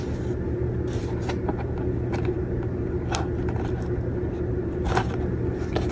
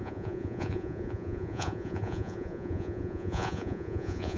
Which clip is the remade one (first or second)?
second